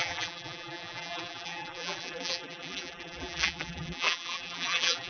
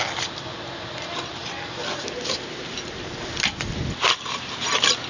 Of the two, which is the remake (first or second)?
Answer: first